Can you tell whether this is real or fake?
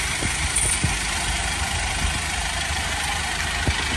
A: real